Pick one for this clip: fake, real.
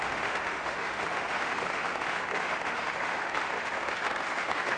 fake